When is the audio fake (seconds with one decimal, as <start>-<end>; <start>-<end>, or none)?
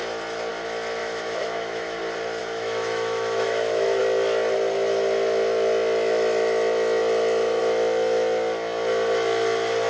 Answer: 1.0-2.0; 2.4-4.0